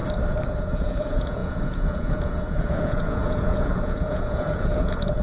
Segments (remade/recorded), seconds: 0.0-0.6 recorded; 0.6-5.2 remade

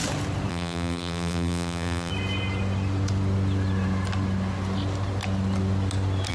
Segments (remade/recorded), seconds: 0.0-0.5 recorded; 0.5-2.1 remade; 2.1-6.3 recorded

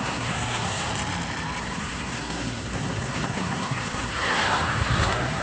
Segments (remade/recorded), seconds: 0.0-0.9 remade; 0.9-1.6 recorded; 1.6-5.4 remade